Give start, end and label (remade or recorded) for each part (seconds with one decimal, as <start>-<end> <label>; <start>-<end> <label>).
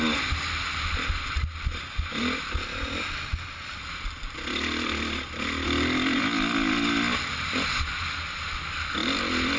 0.0-9.6 recorded